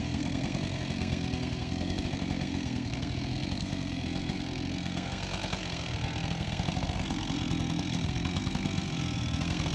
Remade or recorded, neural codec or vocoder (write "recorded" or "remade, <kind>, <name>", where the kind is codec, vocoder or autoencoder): remade, codec, SNAC